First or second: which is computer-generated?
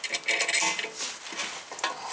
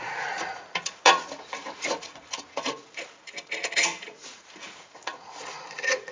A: second